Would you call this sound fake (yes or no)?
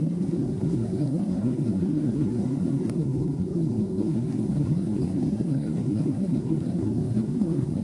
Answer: yes